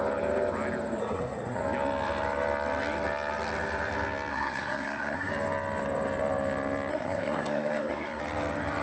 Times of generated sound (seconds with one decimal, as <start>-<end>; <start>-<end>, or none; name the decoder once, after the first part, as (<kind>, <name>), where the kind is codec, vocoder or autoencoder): 1.0-1.6 (codec, SNAC); 4.3-5.3; 6.9-8.2